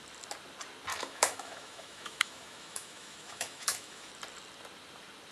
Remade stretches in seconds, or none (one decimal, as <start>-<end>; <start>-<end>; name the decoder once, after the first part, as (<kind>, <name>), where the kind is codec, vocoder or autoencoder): 0.9-4.1 (autoencoder, DAC-VAE)